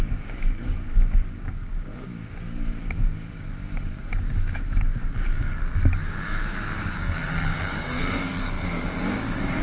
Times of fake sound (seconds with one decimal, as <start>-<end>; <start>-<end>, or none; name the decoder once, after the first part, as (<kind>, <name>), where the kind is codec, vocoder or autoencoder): 0.0-8.0 (codec, DAC); 8.7-9.6